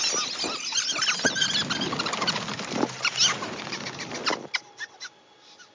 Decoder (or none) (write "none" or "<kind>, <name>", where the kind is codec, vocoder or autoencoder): none